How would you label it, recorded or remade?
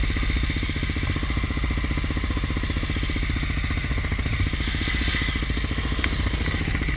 recorded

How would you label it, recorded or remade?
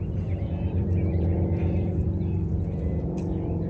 remade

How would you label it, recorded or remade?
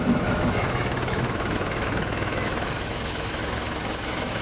remade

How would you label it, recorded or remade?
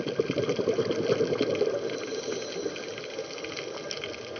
recorded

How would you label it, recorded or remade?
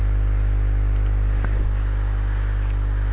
recorded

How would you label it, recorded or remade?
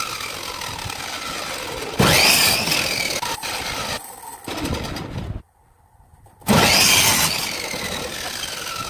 recorded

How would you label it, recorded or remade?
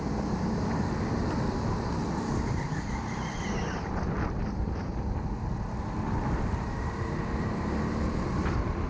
recorded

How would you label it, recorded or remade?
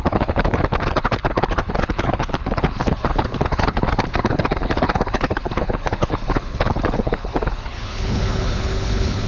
remade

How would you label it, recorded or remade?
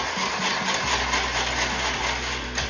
recorded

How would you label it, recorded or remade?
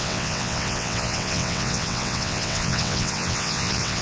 remade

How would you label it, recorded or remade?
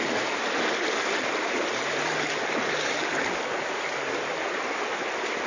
recorded